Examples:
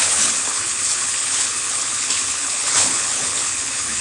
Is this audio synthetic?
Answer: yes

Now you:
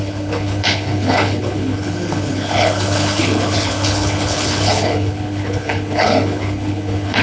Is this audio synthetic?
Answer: yes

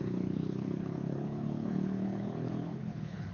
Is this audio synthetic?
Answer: yes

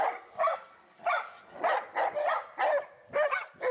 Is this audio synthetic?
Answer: no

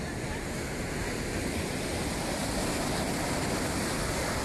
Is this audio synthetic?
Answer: no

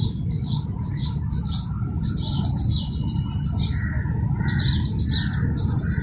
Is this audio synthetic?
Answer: no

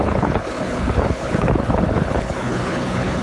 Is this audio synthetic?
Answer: yes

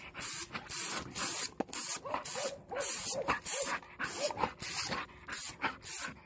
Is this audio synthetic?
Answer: no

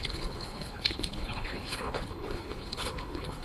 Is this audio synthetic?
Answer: yes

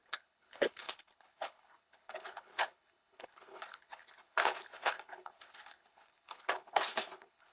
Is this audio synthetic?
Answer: yes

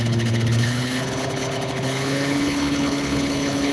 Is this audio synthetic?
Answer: yes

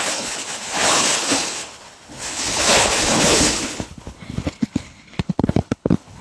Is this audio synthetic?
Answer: yes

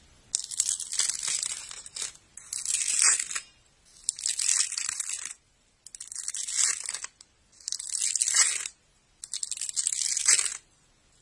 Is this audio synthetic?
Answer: no